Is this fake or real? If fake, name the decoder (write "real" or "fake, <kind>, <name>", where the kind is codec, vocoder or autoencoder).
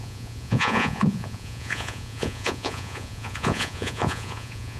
fake, vocoder, Vocos